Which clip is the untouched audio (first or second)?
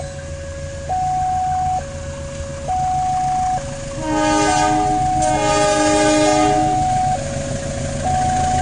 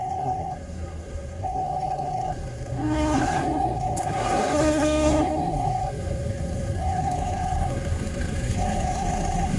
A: first